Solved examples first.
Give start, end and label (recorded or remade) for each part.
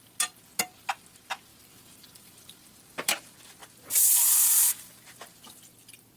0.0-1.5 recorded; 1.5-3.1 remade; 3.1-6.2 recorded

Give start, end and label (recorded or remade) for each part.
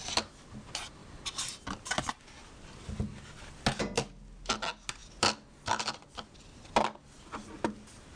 0.0-8.1 recorded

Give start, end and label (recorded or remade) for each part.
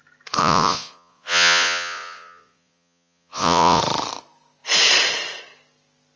0.0-0.4 recorded; 0.4-3.8 remade; 3.8-6.2 recorded